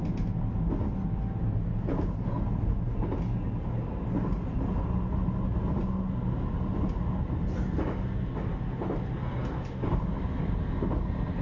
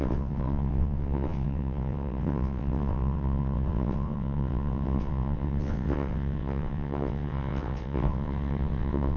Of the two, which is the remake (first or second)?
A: second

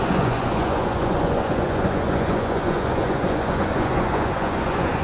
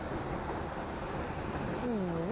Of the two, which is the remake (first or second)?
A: first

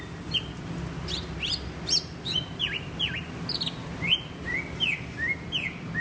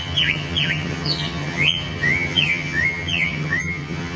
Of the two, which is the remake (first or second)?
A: second